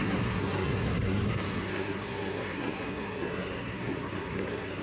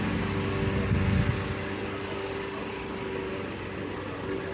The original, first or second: second